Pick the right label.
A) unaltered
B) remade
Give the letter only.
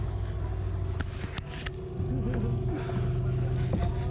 A